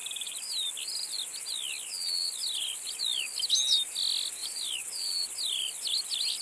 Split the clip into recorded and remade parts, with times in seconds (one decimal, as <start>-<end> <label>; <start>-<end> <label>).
0.0-4.4 recorded; 4.4-5.2 remade; 5.2-6.4 recorded